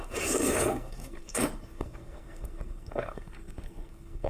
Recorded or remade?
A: remade